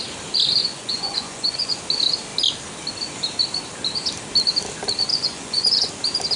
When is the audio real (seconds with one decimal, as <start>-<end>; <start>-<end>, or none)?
0.0-0.6; 1.8-5.1; 5.9-6.4